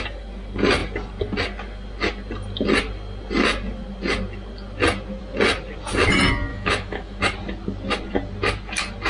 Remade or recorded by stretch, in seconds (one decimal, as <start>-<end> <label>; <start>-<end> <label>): 0.0-6.5 recorded; 6.5-7.2 remade; 7.2-9.1 recorded